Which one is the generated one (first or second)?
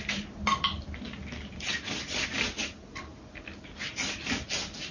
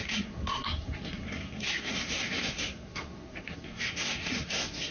second